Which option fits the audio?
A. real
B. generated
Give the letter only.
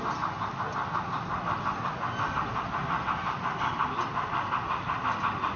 A